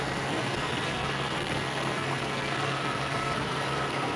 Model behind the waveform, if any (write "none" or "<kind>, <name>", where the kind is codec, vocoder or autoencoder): codec, SNAC